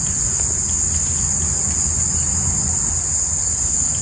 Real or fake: real